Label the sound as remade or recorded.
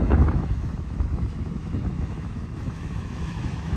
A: remade